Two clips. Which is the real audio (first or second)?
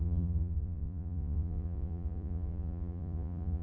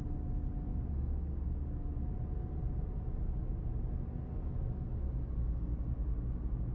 second